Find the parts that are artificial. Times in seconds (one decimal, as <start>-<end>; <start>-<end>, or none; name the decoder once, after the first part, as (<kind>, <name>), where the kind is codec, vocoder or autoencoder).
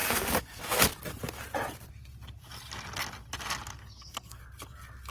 0.0-0.8 (codec, SNAC); 3.8-4.4